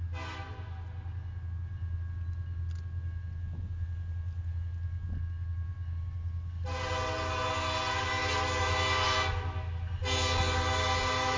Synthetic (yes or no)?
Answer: no